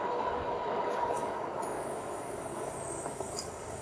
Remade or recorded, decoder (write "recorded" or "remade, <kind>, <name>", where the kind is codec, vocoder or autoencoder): remade, codec, DAC